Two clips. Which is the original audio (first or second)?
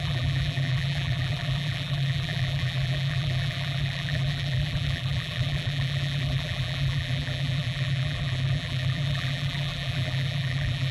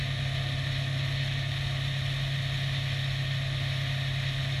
second